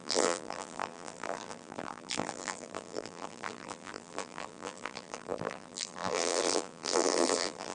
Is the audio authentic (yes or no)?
no